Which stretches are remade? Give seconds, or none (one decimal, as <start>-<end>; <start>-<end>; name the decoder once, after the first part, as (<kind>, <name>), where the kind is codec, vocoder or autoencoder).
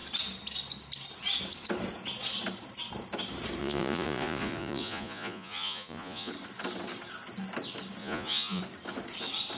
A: 3.6-6.3 (vocoder, Vocos); 8.0-8.6